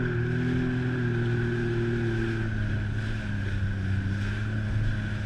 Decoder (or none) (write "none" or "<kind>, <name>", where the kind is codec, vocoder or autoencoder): none